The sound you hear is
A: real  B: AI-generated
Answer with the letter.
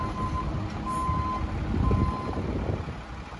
A